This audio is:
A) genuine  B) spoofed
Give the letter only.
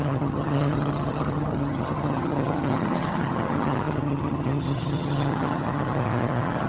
B